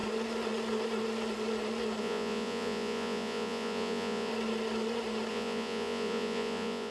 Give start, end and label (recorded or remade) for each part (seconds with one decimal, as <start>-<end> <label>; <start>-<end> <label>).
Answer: 0.0-2.0 recorded; 2.0-4.3 remade; 4.3-5.3 recorded; 5.3-6.9 remade